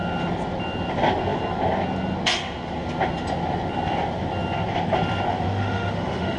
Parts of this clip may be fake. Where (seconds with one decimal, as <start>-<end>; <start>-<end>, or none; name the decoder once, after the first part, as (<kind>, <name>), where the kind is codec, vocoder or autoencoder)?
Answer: 5.3-6.4 (autoencoder, DAC-VAE)

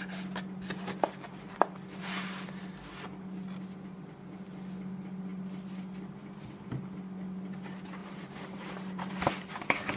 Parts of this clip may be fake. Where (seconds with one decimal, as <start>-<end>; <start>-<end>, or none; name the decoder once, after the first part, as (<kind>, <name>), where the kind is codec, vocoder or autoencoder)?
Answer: 8.0-9.1 (vocoder, BigVGAN v2)

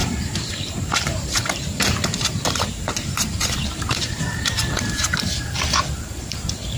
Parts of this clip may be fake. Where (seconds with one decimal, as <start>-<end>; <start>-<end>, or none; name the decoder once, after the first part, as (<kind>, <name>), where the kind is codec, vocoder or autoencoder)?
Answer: 0.0-6.8 (vocoder, BigVGAN v2)

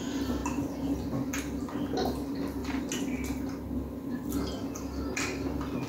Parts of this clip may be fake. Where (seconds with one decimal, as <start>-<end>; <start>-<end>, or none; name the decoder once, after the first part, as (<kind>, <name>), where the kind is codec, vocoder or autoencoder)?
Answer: none

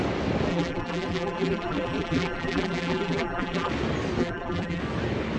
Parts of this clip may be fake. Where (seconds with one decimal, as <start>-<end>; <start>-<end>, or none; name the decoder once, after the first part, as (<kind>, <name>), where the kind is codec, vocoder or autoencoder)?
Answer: 0.5-3.7 (vocoder, BigVGAN v2); 4.2-4.8

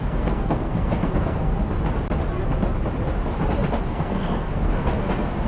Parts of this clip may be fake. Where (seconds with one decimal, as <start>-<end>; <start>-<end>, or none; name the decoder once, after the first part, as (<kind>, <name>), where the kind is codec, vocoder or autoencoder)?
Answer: 0.0-1.5 (codec, SNAC); 3.8-5.5